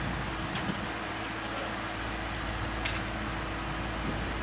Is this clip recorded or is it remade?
recorded